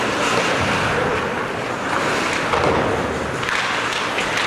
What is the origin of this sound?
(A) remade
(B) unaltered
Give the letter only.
B